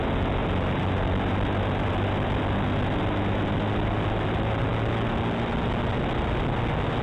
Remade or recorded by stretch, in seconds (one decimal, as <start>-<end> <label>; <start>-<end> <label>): 0.0-7.0 recorded